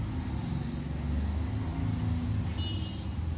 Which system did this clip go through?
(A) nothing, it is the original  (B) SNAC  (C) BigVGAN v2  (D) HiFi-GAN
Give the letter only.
A